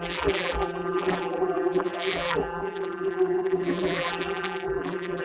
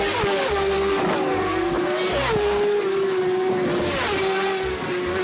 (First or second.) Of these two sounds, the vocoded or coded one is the first